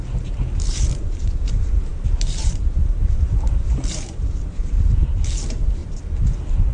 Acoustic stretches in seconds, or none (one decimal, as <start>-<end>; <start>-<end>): 5.8-6.7

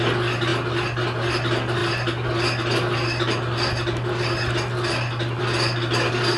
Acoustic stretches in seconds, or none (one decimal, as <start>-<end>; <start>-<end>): 0.0-6.4

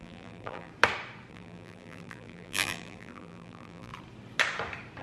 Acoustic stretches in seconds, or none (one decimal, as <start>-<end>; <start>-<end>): 0.7-1.3; 3.9-5.0

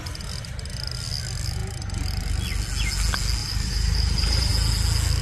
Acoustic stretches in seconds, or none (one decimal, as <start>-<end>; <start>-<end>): 0.0-3.4; 4.5-5.2

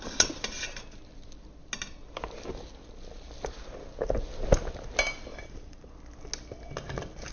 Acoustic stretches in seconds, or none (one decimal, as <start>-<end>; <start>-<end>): 0.0-5.3; 5.9-7.3

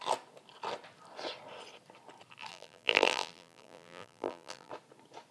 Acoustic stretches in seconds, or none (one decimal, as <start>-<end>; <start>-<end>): 0.0-2.5; 4.7-5.3